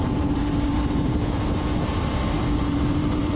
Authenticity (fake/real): fake